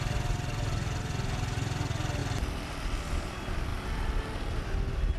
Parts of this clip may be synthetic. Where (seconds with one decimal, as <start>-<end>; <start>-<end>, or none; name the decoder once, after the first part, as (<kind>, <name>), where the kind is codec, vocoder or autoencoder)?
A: none